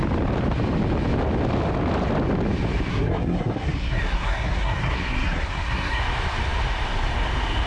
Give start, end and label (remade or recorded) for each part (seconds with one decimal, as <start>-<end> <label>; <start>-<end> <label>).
0.0-2.9 recorded; 2.9-6.0 remade; 6.0-7.7 recorded